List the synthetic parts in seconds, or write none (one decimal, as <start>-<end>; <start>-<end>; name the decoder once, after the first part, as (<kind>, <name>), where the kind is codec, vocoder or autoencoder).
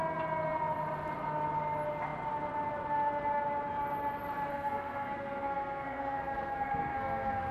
4.5-7.5 (codec, SNAC)